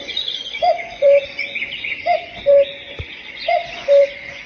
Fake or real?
fake